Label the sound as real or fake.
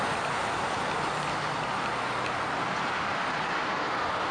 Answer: real